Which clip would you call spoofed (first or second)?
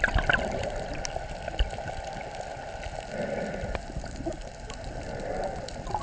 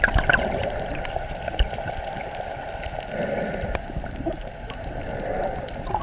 second